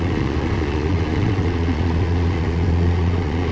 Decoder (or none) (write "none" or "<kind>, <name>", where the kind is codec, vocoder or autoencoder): vocoder, Vocos